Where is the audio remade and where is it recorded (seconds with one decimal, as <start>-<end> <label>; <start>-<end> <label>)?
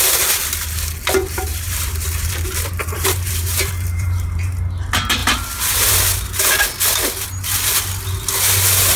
0.0-1.2 recorded; 1.2-4.5 remade; 4.5-5.2 recorded; 5.2-5.9 remade; 5.9-9.0 recorded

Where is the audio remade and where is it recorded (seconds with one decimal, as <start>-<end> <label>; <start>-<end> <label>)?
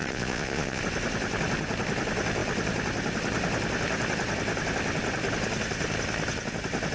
0.0-0.8 remade; 0.8-6.9 recorded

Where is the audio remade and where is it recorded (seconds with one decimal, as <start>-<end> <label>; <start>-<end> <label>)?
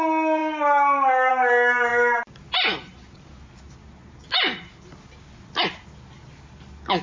0.0-7.0 recorded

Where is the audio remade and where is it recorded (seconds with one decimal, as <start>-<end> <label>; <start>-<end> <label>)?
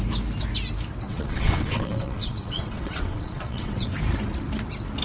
0.0-1.1 recorded; 1.1-3.9 remade; 3.9-5.0 recorded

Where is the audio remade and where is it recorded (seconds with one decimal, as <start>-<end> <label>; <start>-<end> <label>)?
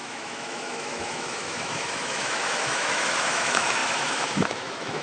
0.0-5.0 remade